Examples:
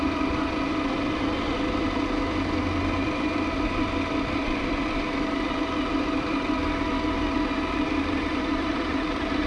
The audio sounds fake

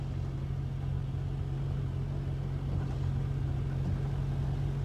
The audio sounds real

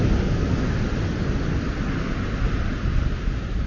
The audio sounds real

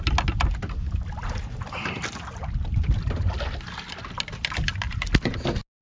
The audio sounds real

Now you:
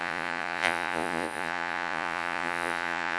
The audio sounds fake